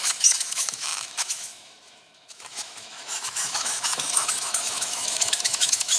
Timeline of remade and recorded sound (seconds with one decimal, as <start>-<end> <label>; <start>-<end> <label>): 0.0-6.0 remade